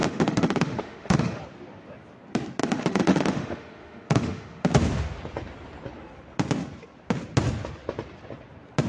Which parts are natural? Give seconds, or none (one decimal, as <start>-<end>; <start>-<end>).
1.4-2.6; 4.7-8.9